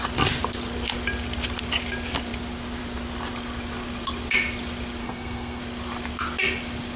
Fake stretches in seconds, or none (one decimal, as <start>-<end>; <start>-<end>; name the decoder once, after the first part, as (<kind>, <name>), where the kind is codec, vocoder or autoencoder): 5.0-5.6 (codec, SNAC)